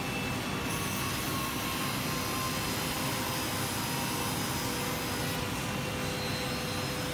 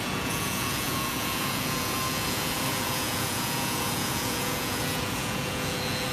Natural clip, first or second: first